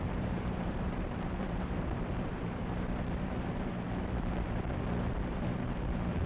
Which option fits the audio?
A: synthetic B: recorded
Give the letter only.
A